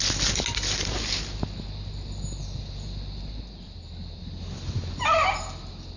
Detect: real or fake real